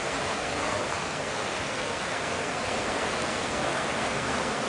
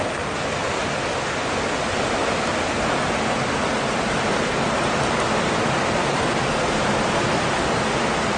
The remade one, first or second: first